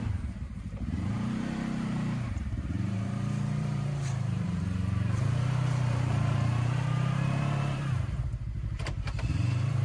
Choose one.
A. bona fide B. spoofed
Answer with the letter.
B